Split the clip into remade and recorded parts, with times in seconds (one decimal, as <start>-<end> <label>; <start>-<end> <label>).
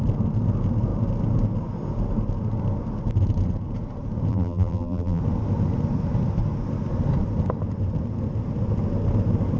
0.0-4.3 recorded; 4.3-5.2 remade; 5.2-9.6 recorded